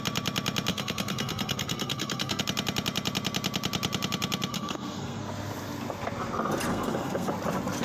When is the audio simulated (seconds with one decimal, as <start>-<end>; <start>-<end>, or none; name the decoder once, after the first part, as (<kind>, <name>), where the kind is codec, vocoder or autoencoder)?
0.7-2.4 (codec, SNAC); 4.5-5.2; 6.7-7.3